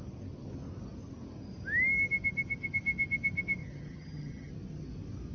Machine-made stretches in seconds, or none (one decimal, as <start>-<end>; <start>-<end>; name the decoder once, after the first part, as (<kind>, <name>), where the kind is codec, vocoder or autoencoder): 3.6-4.5 (vocoder, HiFi-GAN)

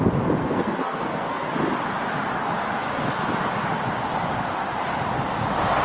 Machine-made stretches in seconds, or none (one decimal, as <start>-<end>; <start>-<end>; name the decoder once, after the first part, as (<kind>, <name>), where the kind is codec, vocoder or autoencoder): 0.4-1.5 (codec, SNAC)

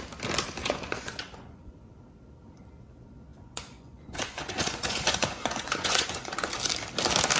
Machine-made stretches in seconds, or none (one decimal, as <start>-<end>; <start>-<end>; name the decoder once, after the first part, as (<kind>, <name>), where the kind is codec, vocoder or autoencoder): 0.6-1.9 (vocoder, Vocos); 3.3-6.5

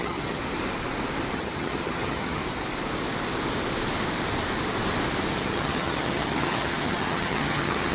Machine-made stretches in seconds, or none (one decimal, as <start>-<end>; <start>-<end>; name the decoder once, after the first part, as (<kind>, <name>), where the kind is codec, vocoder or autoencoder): 0.0-0.4 (vocoder, HiFi-GAN); 1.3-2.4; 5.3-7.9

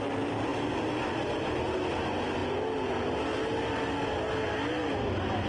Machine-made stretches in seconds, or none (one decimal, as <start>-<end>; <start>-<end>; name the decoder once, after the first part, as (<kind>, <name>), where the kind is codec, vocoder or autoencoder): none

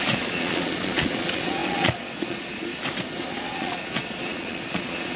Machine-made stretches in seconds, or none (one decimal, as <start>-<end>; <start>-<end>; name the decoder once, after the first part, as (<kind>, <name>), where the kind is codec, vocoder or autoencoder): 0.0-2.7 (vocoder, Vocos); 3.2-5.2